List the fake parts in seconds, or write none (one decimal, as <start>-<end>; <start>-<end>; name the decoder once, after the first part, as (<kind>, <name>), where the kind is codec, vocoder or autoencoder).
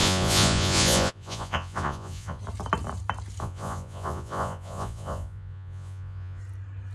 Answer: 0.0-2.4 (vocoder, Vocos); 3.4-6.4